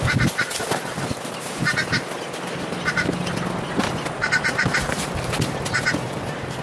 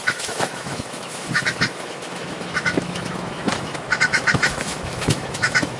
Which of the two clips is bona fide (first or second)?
first